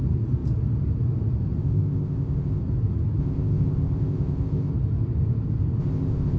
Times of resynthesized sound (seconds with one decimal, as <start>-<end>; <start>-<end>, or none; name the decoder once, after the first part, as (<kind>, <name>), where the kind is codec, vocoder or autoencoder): 1.6-2.6 (codec, ZipCodec); 3.2-4.7; 5.8-6.4